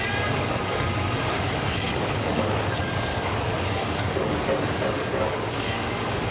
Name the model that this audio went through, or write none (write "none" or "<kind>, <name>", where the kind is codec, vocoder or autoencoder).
codec, DAC